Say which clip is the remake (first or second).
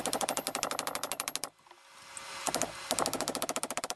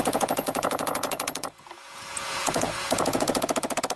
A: second